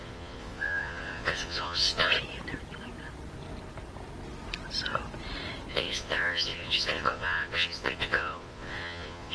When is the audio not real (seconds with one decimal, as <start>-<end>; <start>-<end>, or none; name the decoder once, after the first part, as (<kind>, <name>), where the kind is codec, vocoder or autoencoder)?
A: 0.0-2.1 (vocoder, Vocos); 5.7-9.3